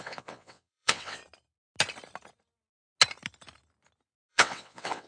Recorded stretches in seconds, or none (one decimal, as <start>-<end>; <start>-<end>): 1.2-4.3